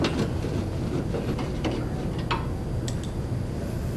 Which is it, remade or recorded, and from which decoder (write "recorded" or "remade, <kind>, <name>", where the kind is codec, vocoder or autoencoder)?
recorded